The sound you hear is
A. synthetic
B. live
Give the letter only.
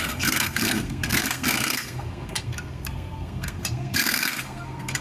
A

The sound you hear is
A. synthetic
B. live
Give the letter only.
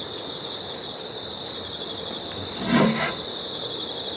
B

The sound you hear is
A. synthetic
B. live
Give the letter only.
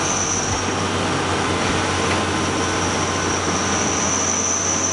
B